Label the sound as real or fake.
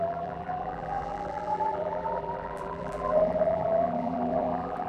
fake